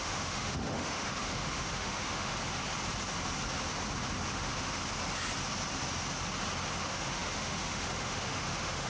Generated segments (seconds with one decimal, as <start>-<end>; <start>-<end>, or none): 0.0-2.3; 4.3-4.8; 6.8-8.9